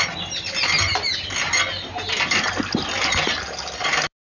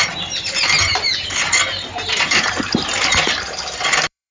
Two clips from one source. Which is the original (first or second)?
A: first